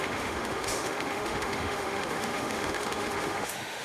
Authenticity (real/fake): fake